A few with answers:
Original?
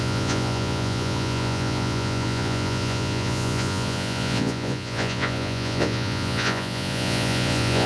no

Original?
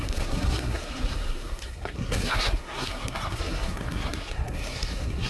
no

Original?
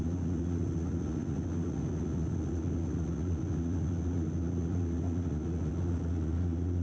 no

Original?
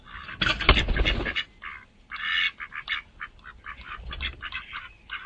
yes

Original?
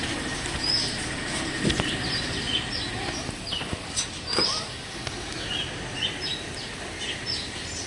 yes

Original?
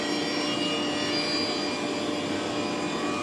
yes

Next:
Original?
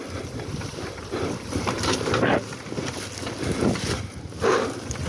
yes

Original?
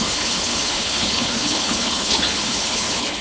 no